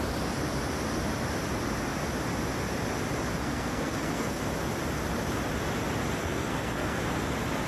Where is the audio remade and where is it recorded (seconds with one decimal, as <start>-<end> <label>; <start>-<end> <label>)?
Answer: 0.0-3.4 recorded; 3.4-4.4 remade; 4.4-6.2 recorded; 6.2-7.0 remade; 7.0-7.7 recorded